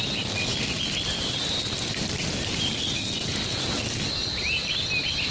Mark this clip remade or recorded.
recorded